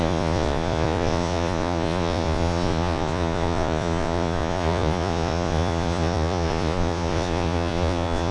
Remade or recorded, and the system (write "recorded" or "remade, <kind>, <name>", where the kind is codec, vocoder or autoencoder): remade, vocoder, Vocos